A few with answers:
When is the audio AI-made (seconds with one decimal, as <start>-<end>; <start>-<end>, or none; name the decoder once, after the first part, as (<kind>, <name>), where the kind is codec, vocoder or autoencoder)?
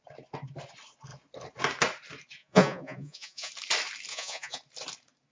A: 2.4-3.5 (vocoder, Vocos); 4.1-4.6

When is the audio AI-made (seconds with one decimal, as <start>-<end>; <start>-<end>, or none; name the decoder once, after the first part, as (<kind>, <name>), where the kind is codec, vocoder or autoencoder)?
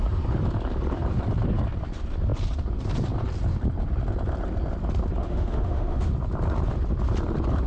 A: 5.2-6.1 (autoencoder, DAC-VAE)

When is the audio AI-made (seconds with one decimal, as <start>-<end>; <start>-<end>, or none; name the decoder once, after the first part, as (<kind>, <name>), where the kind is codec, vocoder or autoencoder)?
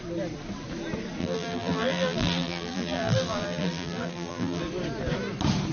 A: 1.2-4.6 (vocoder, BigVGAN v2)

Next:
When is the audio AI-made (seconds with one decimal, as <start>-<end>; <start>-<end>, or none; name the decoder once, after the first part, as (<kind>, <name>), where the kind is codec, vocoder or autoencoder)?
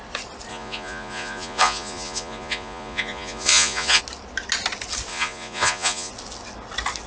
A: 0.5-4.0 (vocoder, Vocos); 5.1-6.1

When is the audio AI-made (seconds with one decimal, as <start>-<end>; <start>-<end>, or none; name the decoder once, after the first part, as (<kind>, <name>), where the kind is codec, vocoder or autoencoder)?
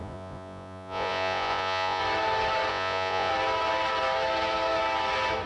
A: 0.0-2.0 (vocoder, Vocos); 2.7-3.3